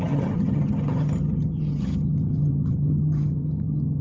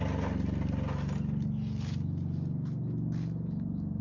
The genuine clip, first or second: second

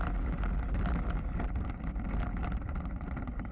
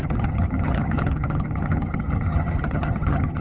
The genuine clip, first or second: first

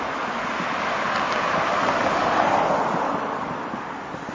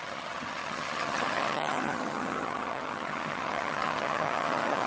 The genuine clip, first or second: first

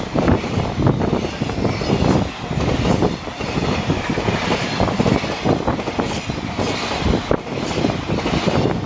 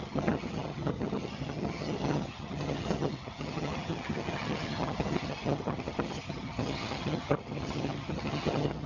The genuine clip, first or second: first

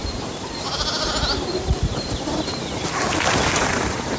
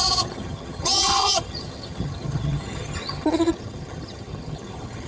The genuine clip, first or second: first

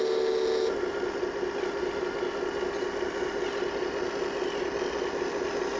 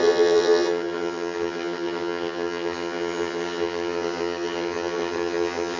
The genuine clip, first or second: first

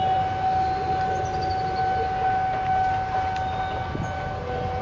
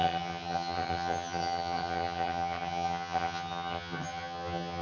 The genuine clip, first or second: first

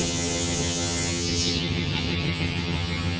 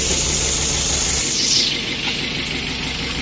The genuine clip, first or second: second